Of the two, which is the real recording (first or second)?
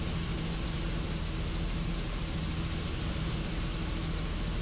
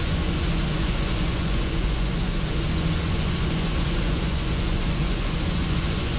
first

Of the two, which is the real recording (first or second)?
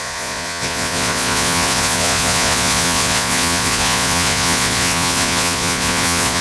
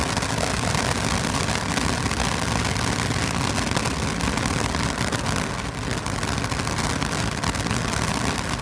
second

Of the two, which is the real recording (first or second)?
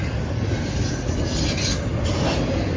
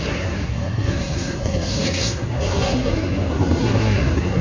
first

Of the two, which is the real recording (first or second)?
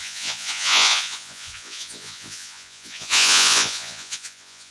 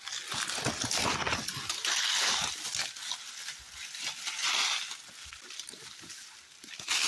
second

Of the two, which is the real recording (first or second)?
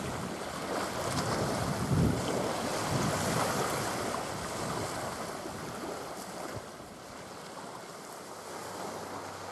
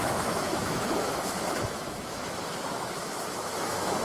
first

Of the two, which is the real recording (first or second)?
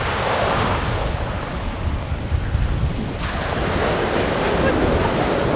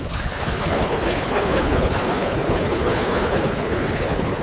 first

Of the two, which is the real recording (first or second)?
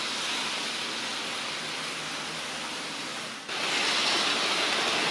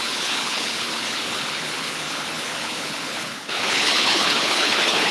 first